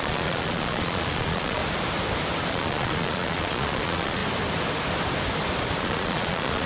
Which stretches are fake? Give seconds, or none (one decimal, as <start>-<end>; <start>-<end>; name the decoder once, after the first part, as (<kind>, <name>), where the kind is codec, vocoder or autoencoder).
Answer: 0.0-1.6 (vocoder, Vocos); 2.5-4.2; 5.8-6.7